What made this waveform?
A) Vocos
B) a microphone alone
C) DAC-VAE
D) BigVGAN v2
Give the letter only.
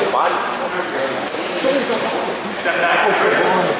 B